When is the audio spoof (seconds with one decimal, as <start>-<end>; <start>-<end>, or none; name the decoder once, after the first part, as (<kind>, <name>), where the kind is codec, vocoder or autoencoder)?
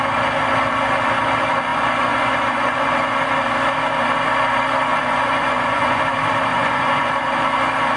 1.7-2.9 (vocoder, Vocos); 4.9-6.0; 6.5-7.1